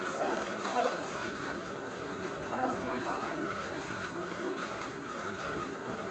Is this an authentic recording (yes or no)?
no